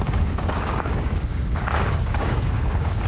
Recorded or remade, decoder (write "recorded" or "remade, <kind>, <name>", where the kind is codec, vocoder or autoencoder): remade, codec, DAC